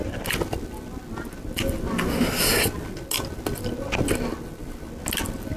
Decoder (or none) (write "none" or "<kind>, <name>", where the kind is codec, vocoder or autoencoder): none